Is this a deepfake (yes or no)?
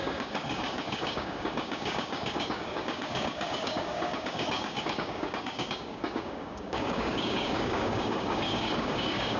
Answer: yes